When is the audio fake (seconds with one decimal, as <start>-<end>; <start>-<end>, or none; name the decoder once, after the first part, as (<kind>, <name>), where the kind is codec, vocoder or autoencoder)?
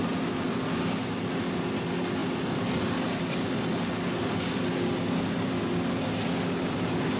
none